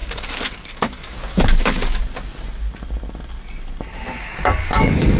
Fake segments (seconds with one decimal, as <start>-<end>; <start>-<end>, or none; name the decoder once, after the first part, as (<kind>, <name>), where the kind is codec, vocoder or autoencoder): 0.0-2.0 (codec, DAC); 4.2-5.2